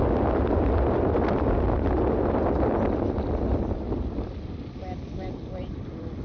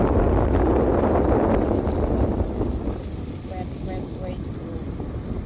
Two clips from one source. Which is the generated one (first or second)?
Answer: first